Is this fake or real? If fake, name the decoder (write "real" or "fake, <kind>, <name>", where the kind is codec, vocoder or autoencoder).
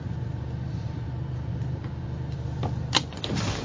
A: fake, vocoder, BigVGAN v2